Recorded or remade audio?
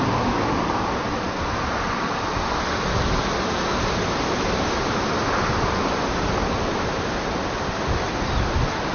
recorded